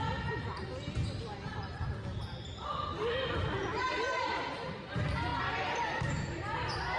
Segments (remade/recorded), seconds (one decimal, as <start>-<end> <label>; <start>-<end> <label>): 0.0-7.0 recorded